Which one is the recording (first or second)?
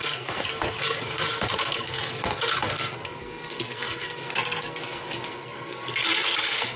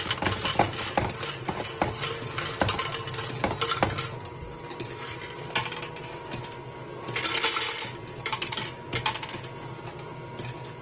second